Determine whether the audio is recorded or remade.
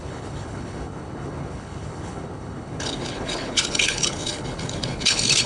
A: remade